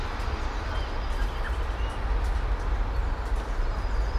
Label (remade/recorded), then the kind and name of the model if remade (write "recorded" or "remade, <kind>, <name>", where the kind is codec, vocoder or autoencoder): recorded